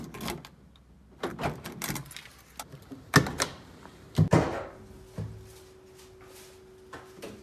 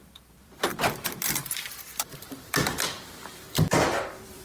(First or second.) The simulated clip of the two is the second